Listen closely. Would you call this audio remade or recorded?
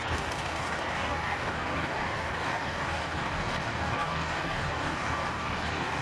remade